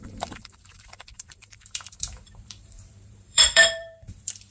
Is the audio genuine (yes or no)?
no